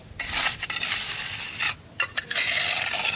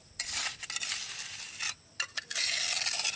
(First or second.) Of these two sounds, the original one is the second